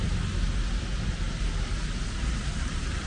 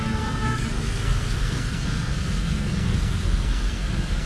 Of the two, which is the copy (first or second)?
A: second